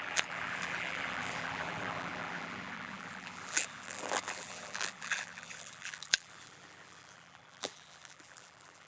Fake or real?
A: fake